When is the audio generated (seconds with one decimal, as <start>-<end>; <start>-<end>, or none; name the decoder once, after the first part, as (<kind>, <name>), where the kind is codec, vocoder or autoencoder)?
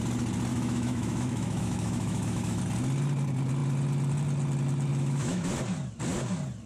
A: 0.5-2.6 (autoencoder, DAC-VAE); 4.9-5.5